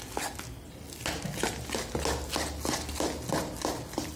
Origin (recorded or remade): recorded